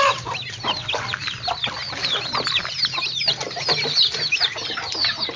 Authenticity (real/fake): real